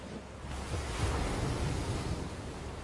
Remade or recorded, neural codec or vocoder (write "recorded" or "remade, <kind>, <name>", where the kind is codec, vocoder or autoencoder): recorded